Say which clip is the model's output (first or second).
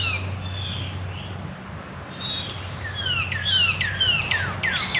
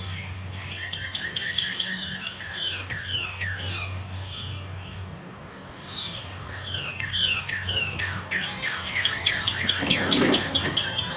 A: second